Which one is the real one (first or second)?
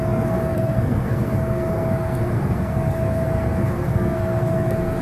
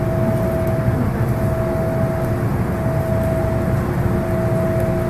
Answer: second